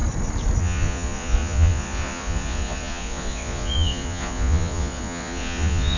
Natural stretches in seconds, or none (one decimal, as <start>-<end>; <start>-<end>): 0.0-0.6